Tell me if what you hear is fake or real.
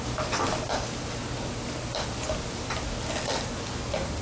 real